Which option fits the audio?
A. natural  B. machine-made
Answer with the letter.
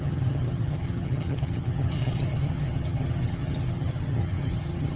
B